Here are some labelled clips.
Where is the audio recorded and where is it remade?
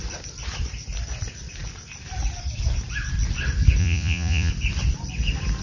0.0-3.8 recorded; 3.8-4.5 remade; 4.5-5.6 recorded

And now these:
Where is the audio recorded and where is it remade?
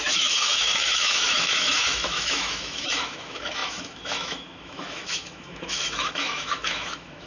0.0-7.3 remade